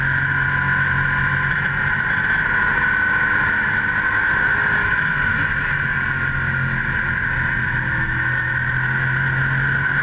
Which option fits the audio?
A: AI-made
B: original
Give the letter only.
B